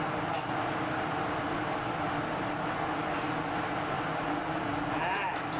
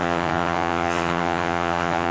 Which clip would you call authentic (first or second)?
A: first